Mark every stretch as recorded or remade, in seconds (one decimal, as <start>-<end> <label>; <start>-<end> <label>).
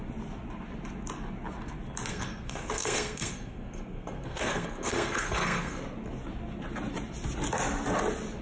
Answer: 0.0-2.1 recorded; 2.1-5.8 remade; 5.8-8.4 recorded